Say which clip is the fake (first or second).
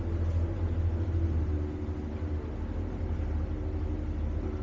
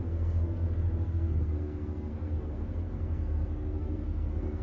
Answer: second